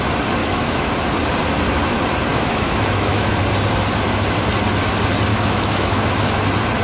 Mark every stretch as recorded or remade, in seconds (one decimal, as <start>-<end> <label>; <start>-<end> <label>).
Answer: 0.0-0.4 recorded; 0.4-0.9 remade; 0.9-2.3 recorded; 2.3-3.4 remade; 3.4-5.3 recorded; 5.3-6.3 remade; 6.3-6.8 recorded